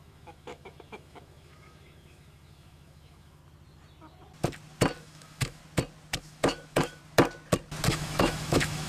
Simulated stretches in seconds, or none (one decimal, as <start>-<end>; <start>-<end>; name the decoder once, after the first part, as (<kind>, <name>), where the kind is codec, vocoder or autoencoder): 0.0-3.4 (autoencoder, DAC-VAE); 5.0-5.6; 6.2-7.0; 7.9-8.9